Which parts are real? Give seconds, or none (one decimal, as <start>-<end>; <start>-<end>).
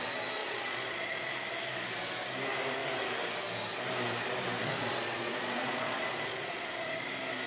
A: 0.0-0.4; 1.3-4.6; 7.1-7.5